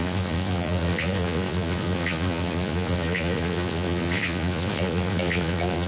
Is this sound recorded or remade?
remade